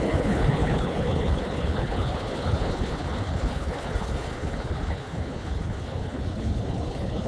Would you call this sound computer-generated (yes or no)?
yes